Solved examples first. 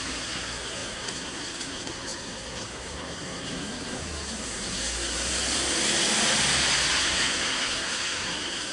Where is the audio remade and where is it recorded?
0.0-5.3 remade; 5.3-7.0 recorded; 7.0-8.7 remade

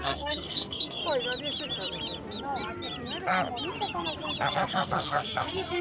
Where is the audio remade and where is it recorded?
0.0-1.0 remade; 1.0-4.5 recorded; 4.5-5.8 remade

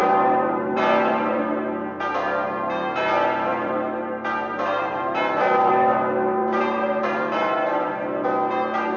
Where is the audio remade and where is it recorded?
0.0-1.4 remade; 1.4-3.5 recorded; 3.5-5.7 remade; 5.7-6.4 recorded; 6.4-7.9 remade; 7.9-9.0 recorded

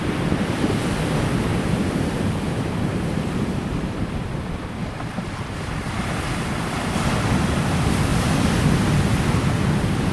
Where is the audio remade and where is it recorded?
0.0-1.5 recorded; 1.5-4.1 remade; 4.1-10.1 recorded

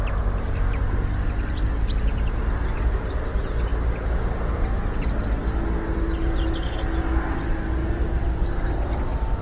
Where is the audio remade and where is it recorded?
0.0-9.4 recorded